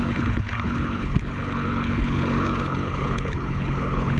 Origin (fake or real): fake